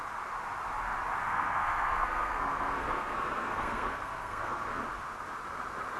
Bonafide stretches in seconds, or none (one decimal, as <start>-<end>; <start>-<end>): 0.0-1.2; 4.8-6.0